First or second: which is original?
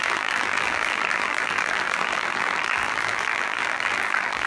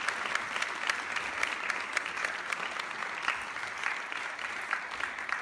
second